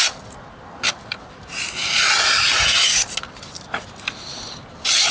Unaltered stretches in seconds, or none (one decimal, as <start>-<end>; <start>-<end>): 0.0-5.1